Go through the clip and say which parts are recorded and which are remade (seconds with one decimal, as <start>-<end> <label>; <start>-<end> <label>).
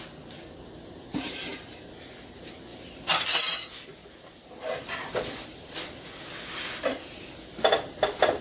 0.0-1.5 recorded; 1.5-2.1 remade; 2.1-2.7 recorded; 2.7-3.4 remade; 3.4-4.0 recorded; 4.0-7.3 remade; 7.3-8.4 recorded